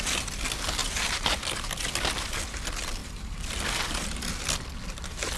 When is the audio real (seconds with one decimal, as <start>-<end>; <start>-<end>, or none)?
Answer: 0.0-0.8; 1.7-3.0; 3.7-5.4